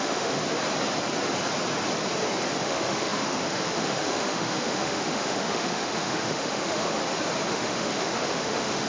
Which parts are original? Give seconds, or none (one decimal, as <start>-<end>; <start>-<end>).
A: 0.4-2.6; 7.0-7.5